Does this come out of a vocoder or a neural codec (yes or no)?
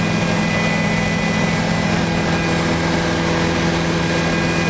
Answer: no